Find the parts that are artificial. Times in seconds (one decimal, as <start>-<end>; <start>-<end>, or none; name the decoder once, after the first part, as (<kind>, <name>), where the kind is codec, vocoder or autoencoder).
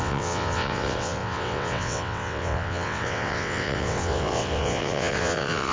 0.0-5.7 (vocoder, WaveNeXt)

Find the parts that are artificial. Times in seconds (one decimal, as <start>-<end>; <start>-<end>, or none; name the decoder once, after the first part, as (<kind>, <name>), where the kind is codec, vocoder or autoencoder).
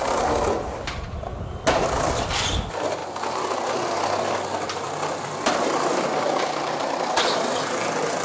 none